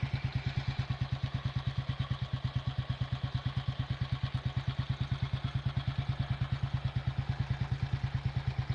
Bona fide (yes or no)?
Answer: yes